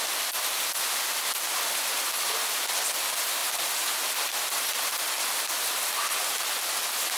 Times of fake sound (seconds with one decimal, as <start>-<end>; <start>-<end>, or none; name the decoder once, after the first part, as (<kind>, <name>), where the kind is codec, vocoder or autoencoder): none